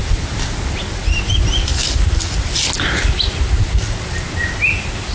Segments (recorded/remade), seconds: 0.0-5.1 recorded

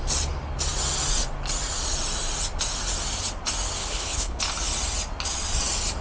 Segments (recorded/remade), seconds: 0.0-3.8 recorded; 3.8-4.4 remade; 4.4-6.0 recorded

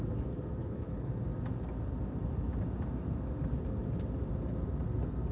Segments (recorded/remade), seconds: 0.0-0.6 recorded; 0.6-1.1 remade; 1.1-5.3 recorded

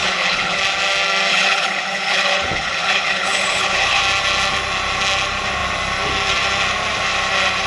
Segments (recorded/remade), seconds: 0.0-0.6 remade; 0.6-1.3 recorded; 1.3-4.0 remade; 4.0-7.7 recorded

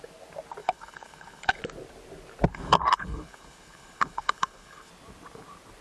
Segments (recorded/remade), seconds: 0.0-0.6 recorded; 0.6-1.6 remade; 1.6-2.5 recorded; 2.5-4.9 remade; 4.9-5.8 recorded

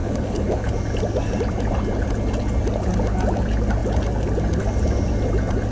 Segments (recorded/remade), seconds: 0.0-0.7 remade; 0.7-5.7 recorded